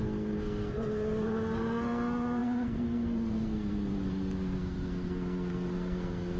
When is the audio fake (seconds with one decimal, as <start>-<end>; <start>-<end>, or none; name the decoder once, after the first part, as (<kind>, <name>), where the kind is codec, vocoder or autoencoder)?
0.0-6.4 (codec, SNAC)